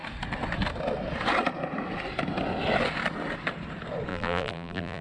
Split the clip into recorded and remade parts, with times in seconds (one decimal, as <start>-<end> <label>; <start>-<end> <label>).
0.0-4.1 recorded; 4.1-5.0 remade